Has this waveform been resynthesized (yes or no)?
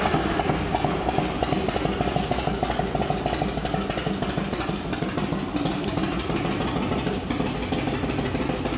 no